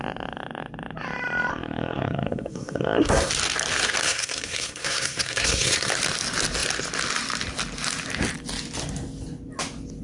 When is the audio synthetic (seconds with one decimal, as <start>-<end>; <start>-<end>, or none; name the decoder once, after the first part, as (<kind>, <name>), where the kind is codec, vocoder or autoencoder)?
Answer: 1.5-3.3 (codec, SNAC); 4.0-5.9